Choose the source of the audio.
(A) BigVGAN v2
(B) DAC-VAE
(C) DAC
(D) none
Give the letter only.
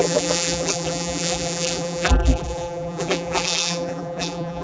A